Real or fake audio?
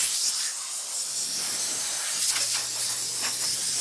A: real